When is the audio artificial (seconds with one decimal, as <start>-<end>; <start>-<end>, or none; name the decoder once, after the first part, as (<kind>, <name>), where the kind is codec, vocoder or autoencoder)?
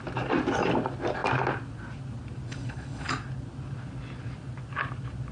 2.5-3.1 (codec, HILCodec)